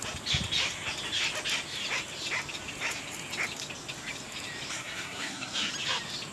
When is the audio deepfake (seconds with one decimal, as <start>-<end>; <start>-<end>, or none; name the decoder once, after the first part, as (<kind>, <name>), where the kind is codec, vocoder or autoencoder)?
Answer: 4.7-5.7 (codec, SNAC)